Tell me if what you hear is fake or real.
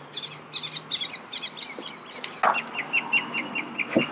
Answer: real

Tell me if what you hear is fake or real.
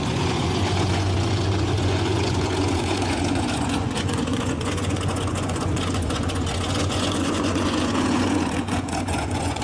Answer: fake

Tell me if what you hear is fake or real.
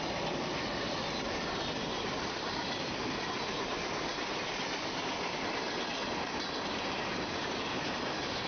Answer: real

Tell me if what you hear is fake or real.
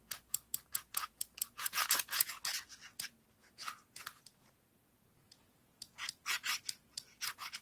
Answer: fake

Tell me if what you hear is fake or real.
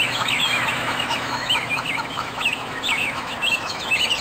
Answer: fake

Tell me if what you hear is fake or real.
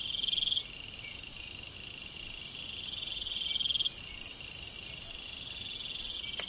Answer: real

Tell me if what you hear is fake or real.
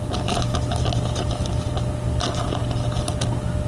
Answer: real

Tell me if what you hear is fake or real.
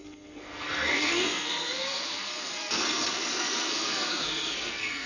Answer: fake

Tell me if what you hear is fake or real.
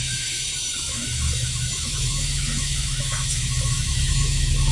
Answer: fake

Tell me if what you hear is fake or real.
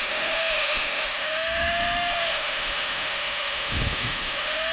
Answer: fake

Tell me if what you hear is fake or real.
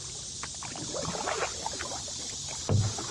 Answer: real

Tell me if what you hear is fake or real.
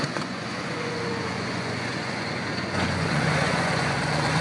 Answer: fake